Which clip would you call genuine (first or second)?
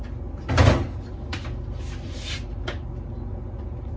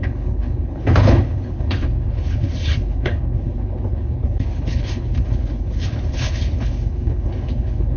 first